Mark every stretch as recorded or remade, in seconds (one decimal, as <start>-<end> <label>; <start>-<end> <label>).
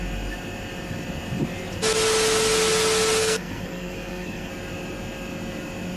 0.0-3.2 recorded; 3.2-4.5 remade; 4.5-6.0 recorded